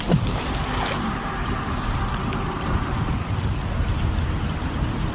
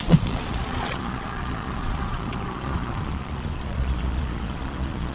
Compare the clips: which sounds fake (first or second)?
second